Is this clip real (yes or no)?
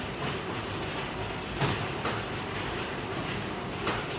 yes